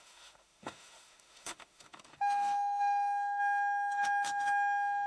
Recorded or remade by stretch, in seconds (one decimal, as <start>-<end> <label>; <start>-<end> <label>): 0.0-5.1 remade